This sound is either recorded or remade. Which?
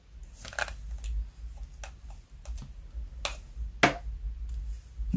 recorded